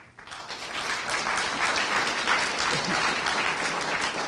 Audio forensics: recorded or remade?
recorded